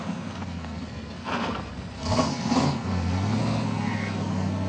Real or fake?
fake